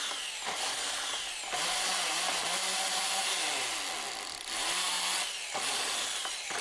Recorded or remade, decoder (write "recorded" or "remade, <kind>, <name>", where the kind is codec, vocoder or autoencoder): recorded